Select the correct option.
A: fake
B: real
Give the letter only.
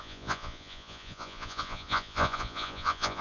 A